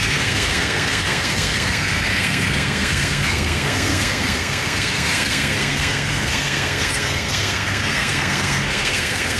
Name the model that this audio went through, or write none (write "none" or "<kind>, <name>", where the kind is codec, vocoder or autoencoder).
codec, SNAC